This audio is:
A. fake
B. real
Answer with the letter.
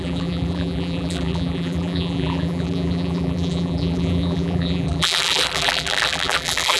A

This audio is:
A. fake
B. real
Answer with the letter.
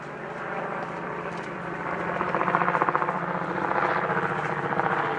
A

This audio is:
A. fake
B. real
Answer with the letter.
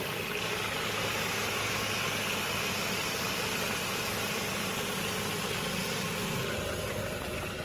B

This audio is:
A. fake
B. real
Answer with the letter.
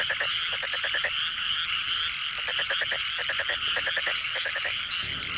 B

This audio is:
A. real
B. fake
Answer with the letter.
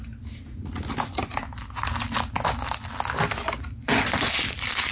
A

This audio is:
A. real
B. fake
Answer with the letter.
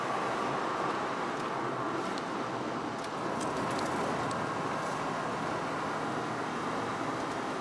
A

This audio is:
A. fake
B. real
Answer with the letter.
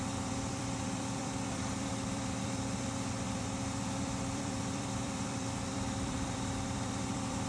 A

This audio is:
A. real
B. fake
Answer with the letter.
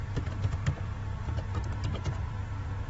B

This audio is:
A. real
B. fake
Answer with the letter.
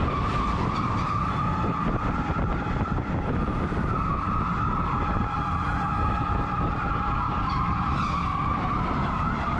B